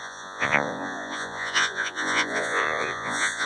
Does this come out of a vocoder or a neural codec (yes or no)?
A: yes